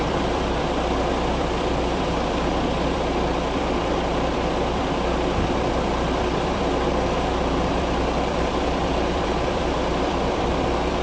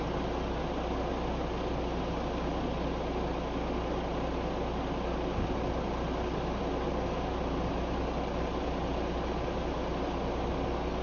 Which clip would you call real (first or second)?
second